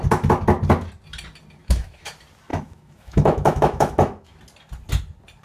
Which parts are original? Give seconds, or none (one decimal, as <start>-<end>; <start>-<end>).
0.0-1.6; 2.1-2.5; 4.4-5.4